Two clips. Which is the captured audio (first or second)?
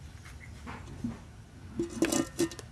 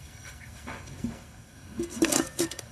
first